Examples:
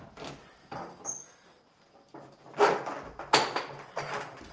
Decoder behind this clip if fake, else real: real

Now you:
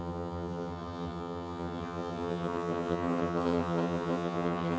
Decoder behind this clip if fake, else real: fake, vocoder, HiFi-GAN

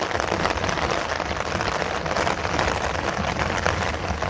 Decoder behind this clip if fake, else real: real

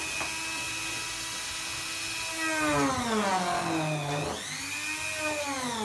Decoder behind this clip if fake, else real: real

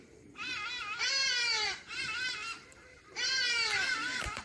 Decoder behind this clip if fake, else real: fake, vocoder, BigVGAN v2